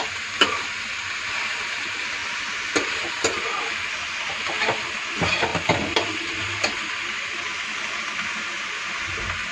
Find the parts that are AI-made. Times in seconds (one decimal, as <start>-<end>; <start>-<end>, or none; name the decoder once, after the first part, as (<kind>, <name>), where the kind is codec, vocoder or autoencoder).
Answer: 2.2-3.1 (vocoder, BigVGAN v2); 5.5-7.3